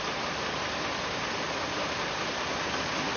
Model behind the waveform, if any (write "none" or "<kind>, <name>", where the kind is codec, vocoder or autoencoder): none